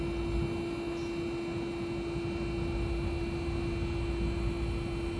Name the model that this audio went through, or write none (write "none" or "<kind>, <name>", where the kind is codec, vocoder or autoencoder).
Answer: none